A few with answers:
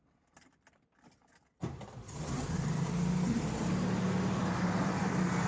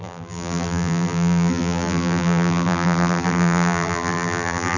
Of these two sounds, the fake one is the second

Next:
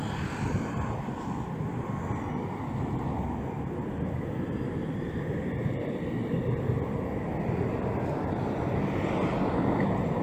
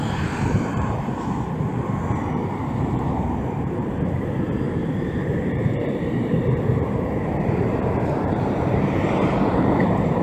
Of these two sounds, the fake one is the second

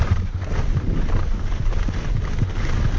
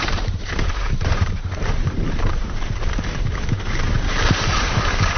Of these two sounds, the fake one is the second